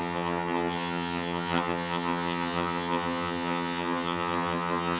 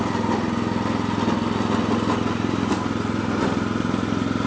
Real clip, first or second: second